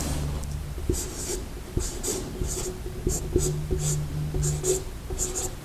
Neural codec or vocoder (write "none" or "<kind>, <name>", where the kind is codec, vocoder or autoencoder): none